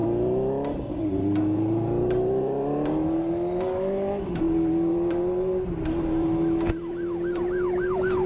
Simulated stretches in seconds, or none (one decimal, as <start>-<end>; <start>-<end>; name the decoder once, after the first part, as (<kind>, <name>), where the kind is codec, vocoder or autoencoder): 1.2-8.3 (vocoder, BigVGAN v2)